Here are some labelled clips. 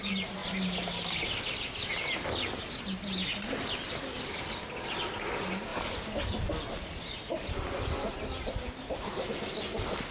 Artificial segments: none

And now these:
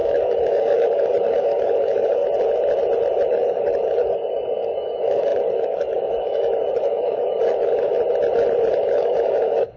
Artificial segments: 0.0-2.2 (codec, DAC); 3.3-7.9; 8.9-9.8

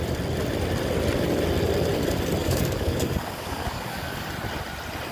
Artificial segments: 2.4-4.3 (codec, DAC)

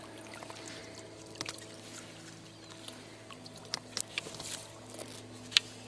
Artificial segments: none